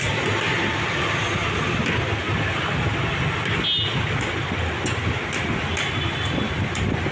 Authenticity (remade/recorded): recorded